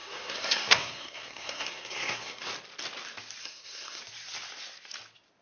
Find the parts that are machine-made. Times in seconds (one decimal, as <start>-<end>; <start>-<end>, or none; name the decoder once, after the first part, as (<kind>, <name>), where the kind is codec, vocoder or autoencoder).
0.0-2.5 (codec, SNAC); 3.4-4.0